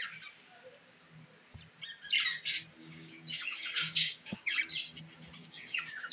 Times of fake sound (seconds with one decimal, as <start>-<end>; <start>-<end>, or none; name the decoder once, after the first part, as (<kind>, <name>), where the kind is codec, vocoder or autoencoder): 2.8-4.6 (codec, DAC); 5.4-6.1